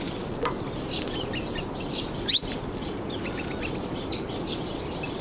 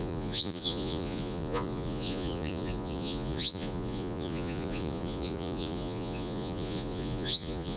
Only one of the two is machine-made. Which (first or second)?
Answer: second